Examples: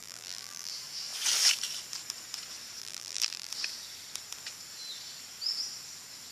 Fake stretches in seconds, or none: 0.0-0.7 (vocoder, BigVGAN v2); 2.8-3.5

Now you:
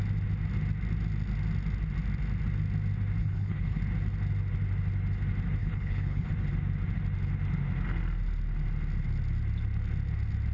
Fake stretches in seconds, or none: 3.2-3.8 (codec, HILCodec); 5.6-6.3

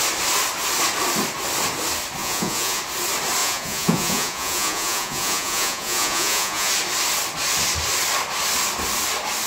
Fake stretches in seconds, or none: 2.2-2.8 (vocoder, Vocos); 3.4-6.7

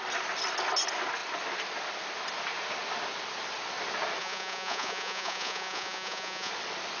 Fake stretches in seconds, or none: 4.2-6.5 (vocoder, Vocos)

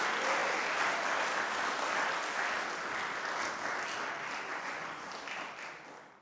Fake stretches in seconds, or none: 4.5-5.1 (vocoder, Vocos)

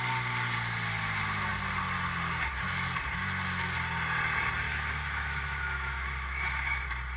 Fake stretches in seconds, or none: 4.7-6.8 (autoencoder, DAC-VAE)

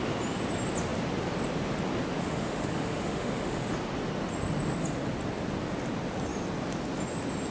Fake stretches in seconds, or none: 2.2-3.7 (autoencoder, DAC-VAE)

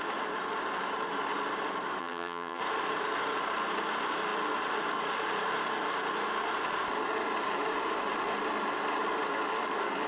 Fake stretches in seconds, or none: 2.0-2.6 (vocoder, HiFi-GAN)